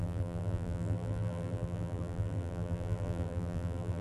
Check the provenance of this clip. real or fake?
fake